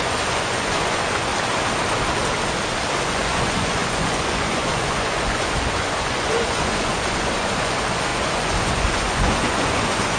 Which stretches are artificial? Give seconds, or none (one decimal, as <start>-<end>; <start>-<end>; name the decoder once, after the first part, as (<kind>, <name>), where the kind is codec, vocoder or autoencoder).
0.0-1.3 (vocoder, Vocos); 3.0-10.2